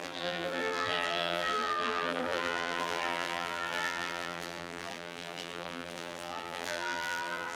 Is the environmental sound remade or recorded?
remade